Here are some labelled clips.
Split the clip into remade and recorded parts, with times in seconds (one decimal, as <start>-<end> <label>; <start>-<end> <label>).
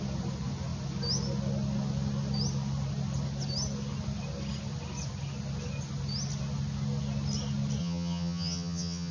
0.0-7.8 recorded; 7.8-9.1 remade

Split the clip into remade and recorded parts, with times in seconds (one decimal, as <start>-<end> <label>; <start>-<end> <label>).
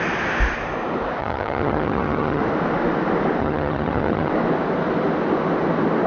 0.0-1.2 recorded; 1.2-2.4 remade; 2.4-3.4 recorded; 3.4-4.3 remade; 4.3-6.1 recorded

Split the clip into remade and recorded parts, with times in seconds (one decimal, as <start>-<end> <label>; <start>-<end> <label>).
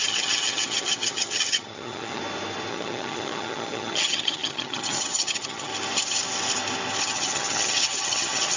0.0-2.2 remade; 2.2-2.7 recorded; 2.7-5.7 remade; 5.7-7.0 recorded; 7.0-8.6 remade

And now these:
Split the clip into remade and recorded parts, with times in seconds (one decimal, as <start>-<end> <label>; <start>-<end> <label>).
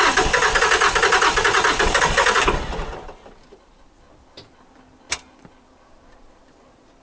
0.0-7.0 recorded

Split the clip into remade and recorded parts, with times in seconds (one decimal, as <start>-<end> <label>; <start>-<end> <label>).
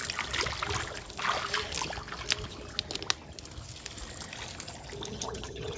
0.0-5.1 recorded; 5.1-5.8 remade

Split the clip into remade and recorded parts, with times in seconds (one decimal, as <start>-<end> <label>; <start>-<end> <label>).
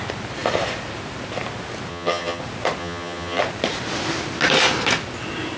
0.0-1.9 recorded; 1.9-2.4 remade; 2.4-2.8 recorded; 2.8-3.4 remade; 3.4-5.6 recorded